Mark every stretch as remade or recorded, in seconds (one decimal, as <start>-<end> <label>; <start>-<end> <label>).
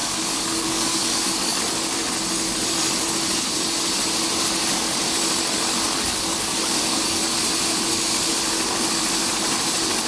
0.0-1.6 remade; 1.6-6.1 recorded; 6.1-7.2 remade; 7.2-10.1 recorded